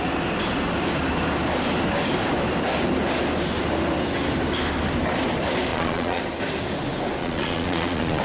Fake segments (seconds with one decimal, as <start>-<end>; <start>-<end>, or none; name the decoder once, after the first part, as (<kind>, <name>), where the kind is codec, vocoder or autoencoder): 5.7-6.2 (vocoder, Vocos); 7.2-8.2